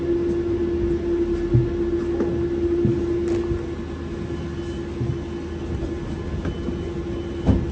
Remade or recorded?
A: recorded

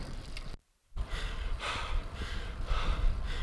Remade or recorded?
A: recorded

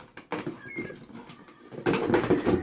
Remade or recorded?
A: recorded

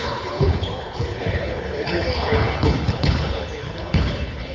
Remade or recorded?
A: remade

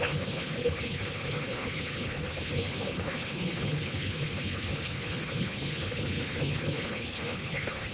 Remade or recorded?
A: remade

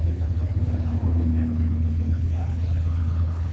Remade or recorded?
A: remade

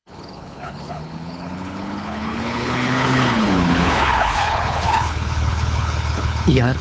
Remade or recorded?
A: remade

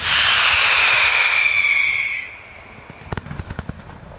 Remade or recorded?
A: recorded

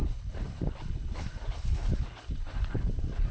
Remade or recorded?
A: remade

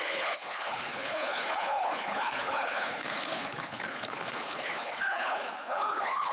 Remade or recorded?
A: remade